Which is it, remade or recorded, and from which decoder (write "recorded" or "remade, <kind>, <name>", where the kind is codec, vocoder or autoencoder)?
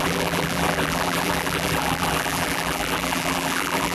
remade, vocoder, BigVGAN v2